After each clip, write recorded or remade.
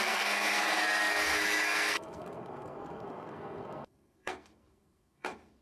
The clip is remade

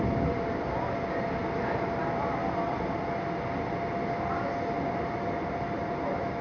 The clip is recorded